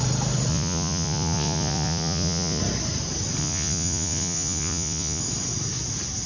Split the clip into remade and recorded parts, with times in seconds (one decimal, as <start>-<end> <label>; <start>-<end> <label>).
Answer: 0.0-0.5 recorded; 0.5-2.6 remade; 2.6-3.4 recorded; 3.4-5.2 remade; 5.2-6.3 recorded